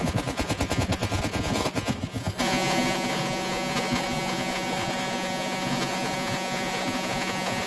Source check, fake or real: fake